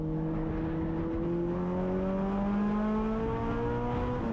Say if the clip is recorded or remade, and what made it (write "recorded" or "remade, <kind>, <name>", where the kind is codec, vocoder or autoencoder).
recorded